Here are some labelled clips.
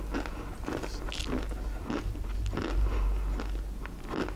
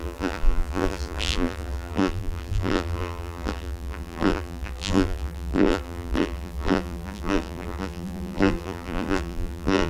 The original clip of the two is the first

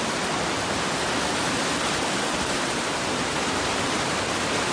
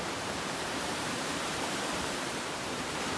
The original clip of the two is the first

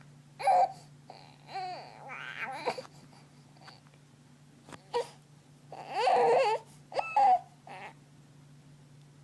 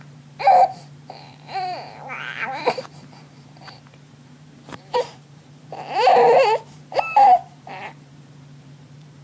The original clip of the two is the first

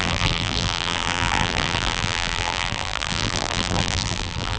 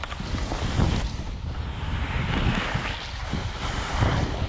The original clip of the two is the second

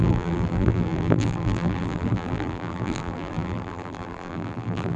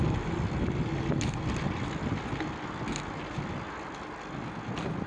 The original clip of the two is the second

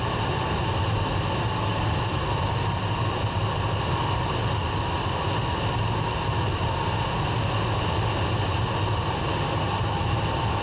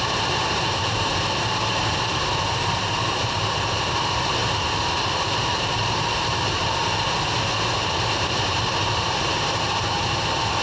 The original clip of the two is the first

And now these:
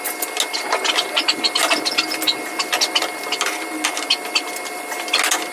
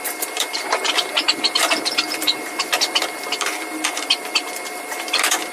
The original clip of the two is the first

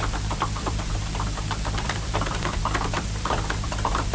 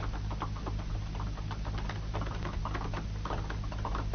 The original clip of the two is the second